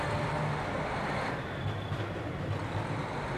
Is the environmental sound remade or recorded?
recorded